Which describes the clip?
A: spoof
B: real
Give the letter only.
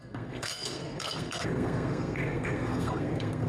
A